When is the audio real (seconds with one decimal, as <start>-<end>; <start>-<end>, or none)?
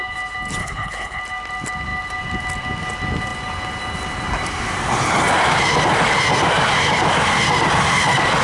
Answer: 0.0-0.6; 1.2-8.4